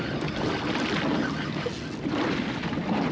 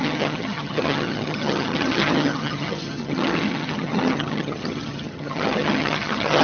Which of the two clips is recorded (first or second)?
first